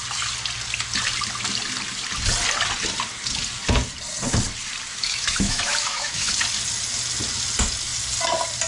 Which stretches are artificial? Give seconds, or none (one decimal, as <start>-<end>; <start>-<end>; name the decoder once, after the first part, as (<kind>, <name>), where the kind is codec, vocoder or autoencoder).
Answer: 4.9-6.3 (autoencoder, DAC-VAE)